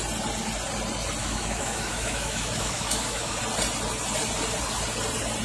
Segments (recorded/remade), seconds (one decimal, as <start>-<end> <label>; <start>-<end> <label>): 0.0-1.2 recorded; 1.2-3.4 remade; 3.4-5.4 recorded